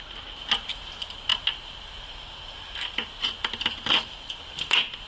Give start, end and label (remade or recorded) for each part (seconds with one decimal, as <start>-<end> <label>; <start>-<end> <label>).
0.0-5.1 recorded